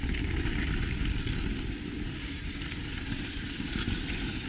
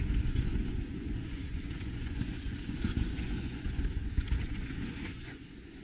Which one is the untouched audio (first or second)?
first